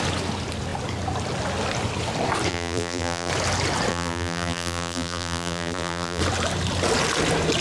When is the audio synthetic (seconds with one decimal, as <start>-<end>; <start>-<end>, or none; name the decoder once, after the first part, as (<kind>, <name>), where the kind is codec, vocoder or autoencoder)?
2.5-3.3 (vocoder, BigVGAN v2); 3.9-6.2